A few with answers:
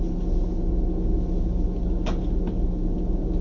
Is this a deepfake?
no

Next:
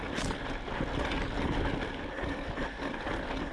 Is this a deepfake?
no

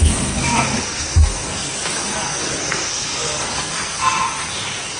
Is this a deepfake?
yes